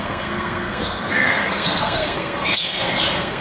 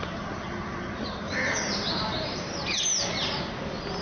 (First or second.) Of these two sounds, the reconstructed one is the first